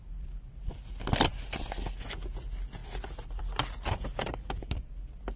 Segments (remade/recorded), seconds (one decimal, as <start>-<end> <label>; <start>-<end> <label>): 0.0-2.8 recorded; 2.8-3.4 remade; 3.4-5.4 recorded